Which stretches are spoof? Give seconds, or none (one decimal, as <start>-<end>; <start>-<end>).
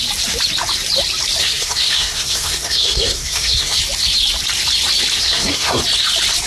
1.4-3.8; 5.2-5.8